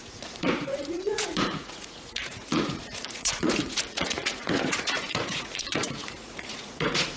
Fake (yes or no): yes